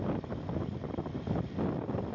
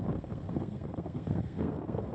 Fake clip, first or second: second